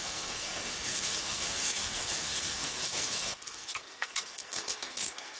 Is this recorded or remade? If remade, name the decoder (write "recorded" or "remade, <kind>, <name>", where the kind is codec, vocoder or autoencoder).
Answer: remade, codec, SNAC